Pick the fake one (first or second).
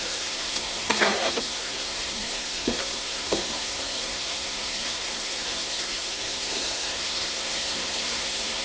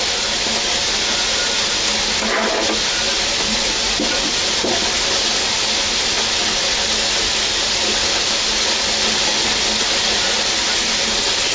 first